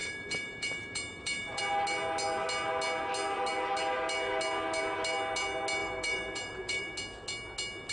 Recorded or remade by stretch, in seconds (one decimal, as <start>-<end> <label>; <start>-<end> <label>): 0.0-1.6 remade; 1.6-5.8 recorded; 5.8-6.9 remade; 6.9-7.9 recorded

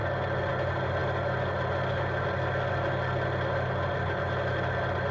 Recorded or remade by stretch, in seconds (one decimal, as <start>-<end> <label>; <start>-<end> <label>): 0.0-5.1 recorded

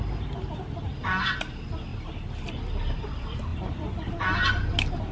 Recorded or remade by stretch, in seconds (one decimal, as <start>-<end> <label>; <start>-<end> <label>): 0.0-3.5 recorded; 3.5-4.1 remade; 4.1-5.1 recorded

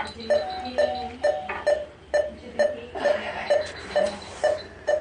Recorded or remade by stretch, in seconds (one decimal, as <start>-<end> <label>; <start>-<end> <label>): 0.0-1.8 recorded; 1.8-4.6 remade; 4.6-5.0 recorded

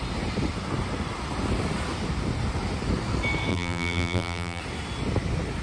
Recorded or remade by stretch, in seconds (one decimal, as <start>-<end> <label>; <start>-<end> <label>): 0.0-3.5 recorded; 3.5-4.6 remade; 4.6-5.6 recorded

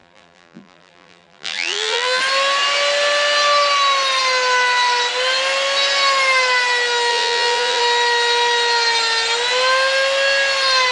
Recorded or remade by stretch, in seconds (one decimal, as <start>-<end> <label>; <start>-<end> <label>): 0.0-2.2 remade; 2.2-7.1 recorded; 7.1-7.8 remade; 7.8-10.9 recorded

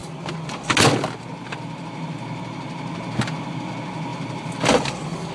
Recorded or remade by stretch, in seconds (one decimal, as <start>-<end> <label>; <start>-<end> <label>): 0.0-4.1 recorded; 4.1-5.3 remade